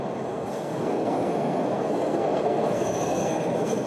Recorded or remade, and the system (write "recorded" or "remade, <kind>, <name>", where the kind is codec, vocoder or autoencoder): remade, codec, SNAC